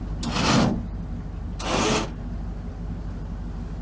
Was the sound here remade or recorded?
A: recorded